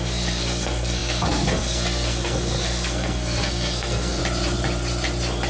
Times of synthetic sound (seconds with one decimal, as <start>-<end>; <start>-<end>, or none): 0.0-4.2